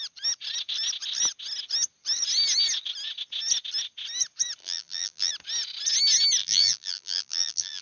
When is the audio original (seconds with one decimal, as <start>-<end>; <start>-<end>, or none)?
0.0-4.6; 5.3-6.4